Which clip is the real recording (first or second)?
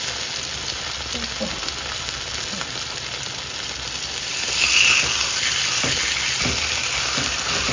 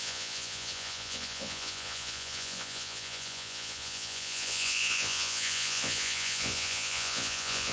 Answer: first